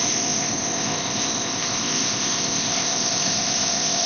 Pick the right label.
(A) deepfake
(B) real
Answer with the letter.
A